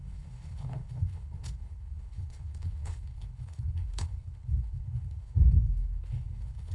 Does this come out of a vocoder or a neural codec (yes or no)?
yes